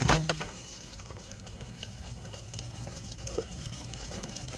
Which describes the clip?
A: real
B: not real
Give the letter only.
B